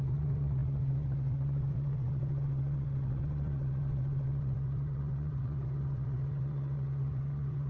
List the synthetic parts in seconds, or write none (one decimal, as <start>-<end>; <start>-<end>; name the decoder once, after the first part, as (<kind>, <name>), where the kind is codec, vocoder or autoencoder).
0.0-7.7 (vocoder, WaveNeXt)

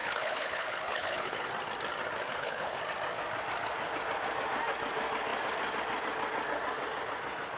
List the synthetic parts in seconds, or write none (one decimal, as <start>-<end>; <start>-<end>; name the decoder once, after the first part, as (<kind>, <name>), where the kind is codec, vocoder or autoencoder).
0.0-1.5 (codec, HILCodec); 2.3-2.8

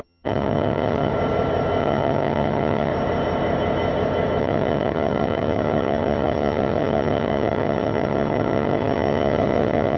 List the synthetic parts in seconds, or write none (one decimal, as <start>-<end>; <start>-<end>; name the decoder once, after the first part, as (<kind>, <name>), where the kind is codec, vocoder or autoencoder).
0.0-1.1 (vocoder, HiFi-GAN); 1.8-2.9; 4.4-10.0

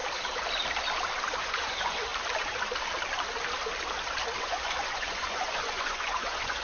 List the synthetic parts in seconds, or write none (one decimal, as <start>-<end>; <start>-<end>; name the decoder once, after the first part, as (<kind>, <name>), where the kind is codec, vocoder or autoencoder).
1.4-2.1 (vocoder, Vocos); 4.4-6.6

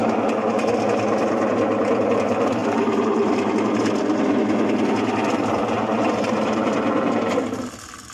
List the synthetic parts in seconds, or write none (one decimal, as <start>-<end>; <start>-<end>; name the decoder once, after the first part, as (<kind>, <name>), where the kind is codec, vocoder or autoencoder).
2.6-3.5 (vocoder, BigVGAN v2)

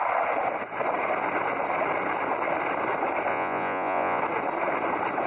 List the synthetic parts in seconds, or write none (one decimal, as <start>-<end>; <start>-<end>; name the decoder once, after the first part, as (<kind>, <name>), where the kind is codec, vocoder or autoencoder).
3.3-4.2 (vocoder, Vocos)

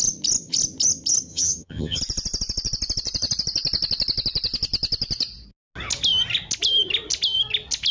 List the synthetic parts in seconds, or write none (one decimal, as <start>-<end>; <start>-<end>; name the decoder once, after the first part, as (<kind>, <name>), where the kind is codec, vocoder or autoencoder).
1.3-2.0 (vocoder, HiFi-GAN)

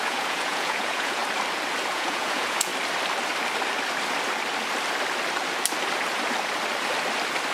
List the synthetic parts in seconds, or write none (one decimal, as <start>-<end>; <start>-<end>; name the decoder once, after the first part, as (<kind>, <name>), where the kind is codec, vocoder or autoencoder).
0.0-1.2 (vocoder, Vocos); 1.9-2.7